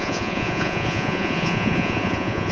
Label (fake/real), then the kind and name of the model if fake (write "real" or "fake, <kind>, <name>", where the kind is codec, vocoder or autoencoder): fake, vocoder, Vocos